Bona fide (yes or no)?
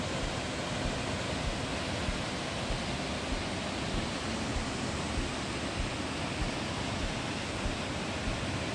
yes